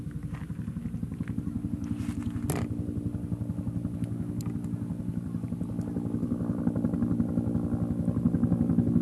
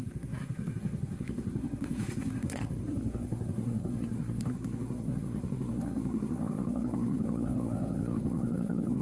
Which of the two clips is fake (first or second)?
second